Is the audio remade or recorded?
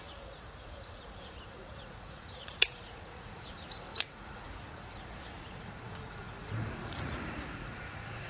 remade